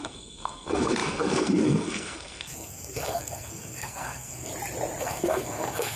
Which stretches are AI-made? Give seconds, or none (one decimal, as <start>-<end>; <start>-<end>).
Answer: 0.0-4.5; 5.0-6.0